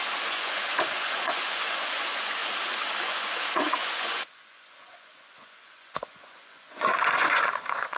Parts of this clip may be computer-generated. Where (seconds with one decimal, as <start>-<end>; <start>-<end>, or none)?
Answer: 0.0-2.4; 3.0-8.0